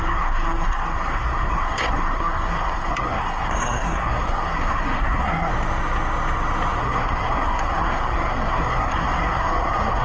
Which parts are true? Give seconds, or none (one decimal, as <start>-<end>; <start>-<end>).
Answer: 5.5-6.8